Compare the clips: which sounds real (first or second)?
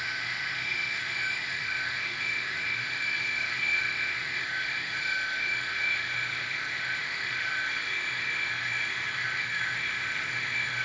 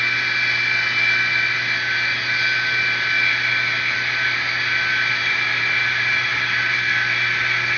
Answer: second